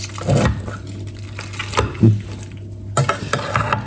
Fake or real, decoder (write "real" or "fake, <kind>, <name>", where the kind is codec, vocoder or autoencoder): real